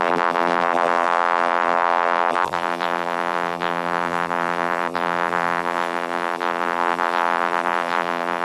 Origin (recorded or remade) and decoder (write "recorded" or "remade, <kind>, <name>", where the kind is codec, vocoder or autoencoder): remade, vocoder, BigVGAN v2